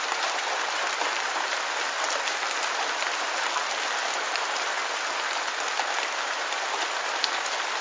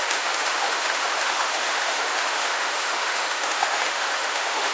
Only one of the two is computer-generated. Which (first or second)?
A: second